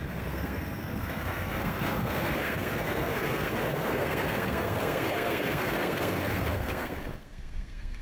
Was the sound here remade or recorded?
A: remade